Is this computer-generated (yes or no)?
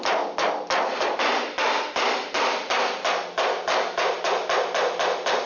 no